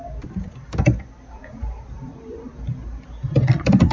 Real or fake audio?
fake